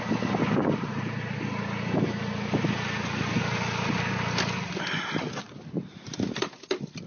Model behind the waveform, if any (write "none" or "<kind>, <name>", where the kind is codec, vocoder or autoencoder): none